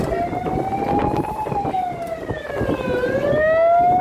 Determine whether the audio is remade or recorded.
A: recorded